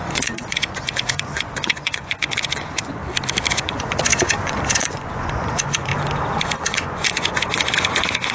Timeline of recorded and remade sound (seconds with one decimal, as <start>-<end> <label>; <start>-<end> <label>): 0.0-3.0 remade; 3.0-3.5 recorded; 3.5-5.9 remade; 5.9-6.4 recorded; 6.4-8.3 remade